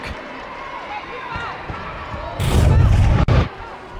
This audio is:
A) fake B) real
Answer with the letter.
B